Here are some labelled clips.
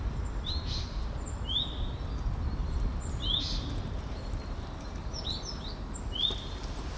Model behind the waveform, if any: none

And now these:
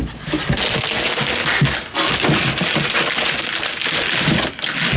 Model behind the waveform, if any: none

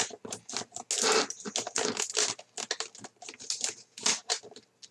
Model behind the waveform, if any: none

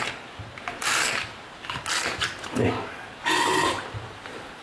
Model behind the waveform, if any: none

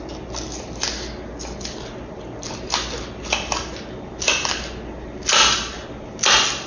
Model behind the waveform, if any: none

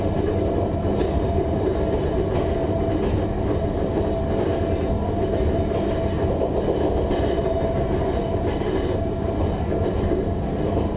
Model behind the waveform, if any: none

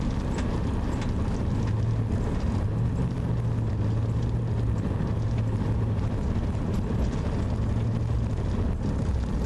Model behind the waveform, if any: none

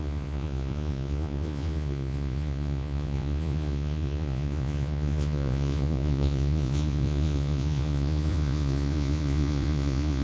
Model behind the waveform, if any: vocoder, Vocos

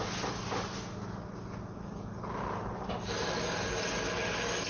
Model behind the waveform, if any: none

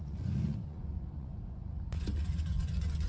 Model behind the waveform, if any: vocoder, Vocos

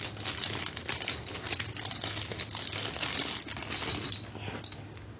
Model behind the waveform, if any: none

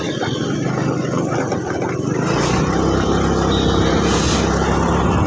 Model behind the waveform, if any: none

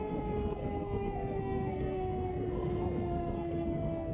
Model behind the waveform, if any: codec, SNAC